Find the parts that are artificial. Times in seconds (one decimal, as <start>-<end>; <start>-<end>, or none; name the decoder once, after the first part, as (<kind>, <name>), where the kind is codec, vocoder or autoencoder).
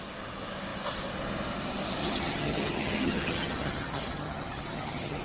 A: 2.0-5.2 (vocoder, HiFi-GAN)